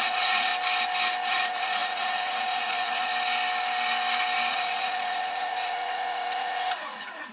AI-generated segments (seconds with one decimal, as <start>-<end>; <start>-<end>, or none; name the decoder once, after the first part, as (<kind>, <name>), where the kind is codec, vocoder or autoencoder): 0.0-0.5 (vocoder, Vocos); 1.3-3.1; 4.5-7.3